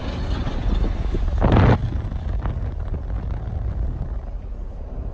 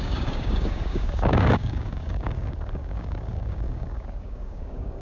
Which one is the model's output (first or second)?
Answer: second